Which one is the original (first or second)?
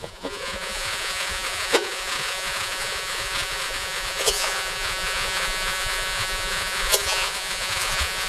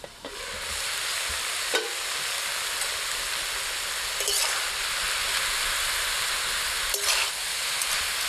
second